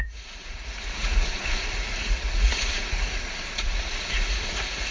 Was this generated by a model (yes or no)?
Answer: yes